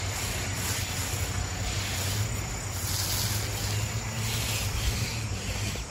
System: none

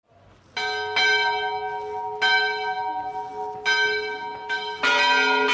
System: none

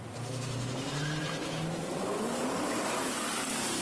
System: vocoder, BigVGAN v2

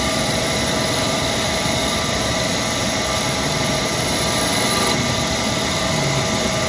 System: vocoder, BigVGAN v2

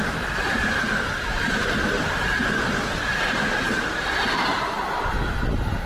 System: none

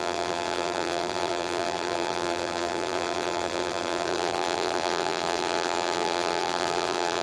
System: vocoder, BigVGAN v2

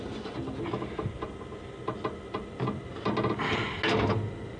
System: none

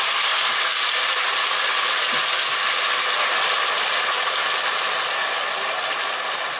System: none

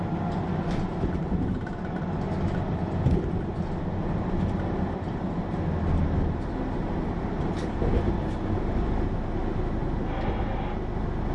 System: none